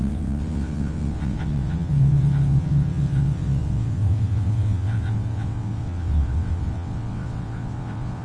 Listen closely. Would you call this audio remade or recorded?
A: remade